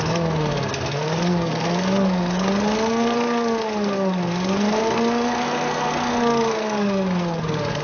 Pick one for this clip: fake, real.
fake